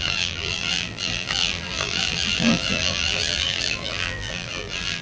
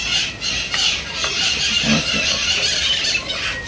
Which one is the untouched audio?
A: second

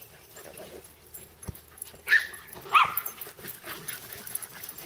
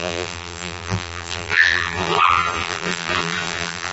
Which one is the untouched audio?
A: first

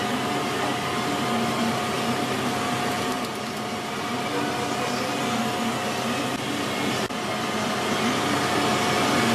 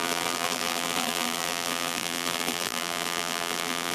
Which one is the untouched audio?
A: first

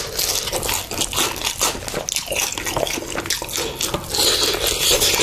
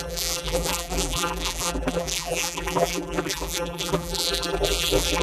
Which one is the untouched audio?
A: first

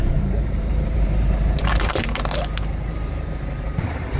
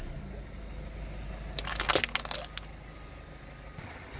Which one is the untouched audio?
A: second